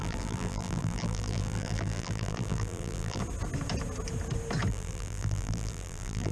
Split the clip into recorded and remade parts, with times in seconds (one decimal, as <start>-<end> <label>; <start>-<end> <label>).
0.0-3.2 remade; 3.2-4.7 recorded; 4.7-6.3 remade

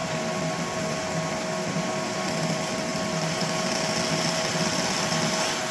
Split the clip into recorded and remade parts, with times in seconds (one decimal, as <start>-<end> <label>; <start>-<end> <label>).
0.0-5.7 recorded